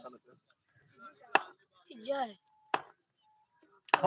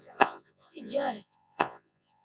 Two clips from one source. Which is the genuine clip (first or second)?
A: first